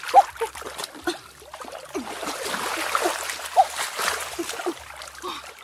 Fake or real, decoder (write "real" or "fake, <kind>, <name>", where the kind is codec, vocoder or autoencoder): real